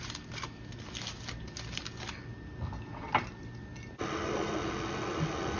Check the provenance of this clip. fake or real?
real